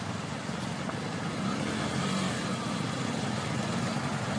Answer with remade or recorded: recorded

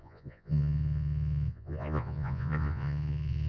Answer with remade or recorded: remade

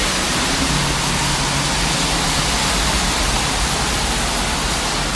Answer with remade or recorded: recorded